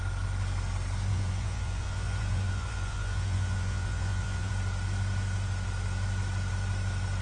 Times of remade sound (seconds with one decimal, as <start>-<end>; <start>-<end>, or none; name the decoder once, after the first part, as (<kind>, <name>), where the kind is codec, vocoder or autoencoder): 1.1-4.5 (vocoder, Vocos)